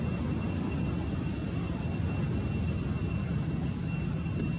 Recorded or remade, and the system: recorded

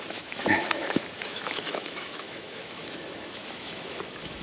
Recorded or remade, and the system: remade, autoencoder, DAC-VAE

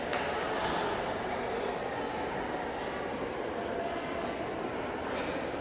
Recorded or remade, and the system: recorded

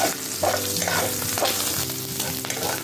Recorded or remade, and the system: recorded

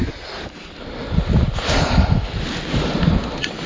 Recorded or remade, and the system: recorded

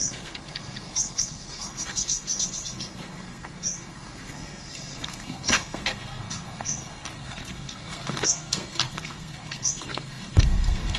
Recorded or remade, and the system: remade, codec, SNAC